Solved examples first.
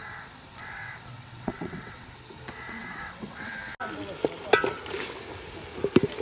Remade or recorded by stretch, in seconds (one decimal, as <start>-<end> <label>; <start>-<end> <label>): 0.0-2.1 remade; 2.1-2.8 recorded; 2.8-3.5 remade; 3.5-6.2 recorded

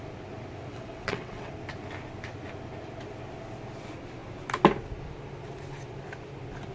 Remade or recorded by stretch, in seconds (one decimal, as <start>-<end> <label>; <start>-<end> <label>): 0.0-0.7 recorded; 0.7-1.5 remade; 1.5-6.7 recorded

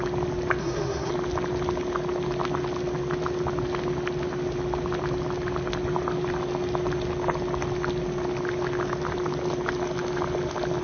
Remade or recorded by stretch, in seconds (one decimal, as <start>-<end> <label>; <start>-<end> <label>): 0.0-0.6 recorded; 0.6-1.1 remade; 1.1-10.8 recorded

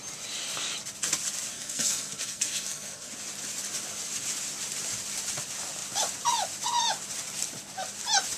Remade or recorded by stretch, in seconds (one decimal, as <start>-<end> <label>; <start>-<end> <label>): 0.0-1.5 recorded; 1.5-3.1 remade; 3.1-8.4 recorded

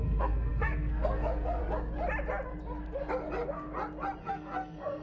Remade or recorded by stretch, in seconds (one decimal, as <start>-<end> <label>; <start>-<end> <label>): 0.0-1.6 remade; 1.6-4.2 recorded; 4.2-5.0 remade